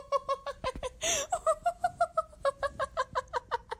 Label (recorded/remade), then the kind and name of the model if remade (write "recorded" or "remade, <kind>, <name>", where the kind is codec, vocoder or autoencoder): recorded